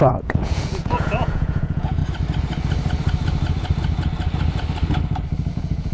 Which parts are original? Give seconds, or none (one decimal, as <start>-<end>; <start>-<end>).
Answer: 2.0-5.5